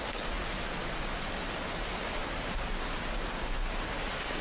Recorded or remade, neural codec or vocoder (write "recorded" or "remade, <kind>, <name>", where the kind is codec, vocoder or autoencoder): recorded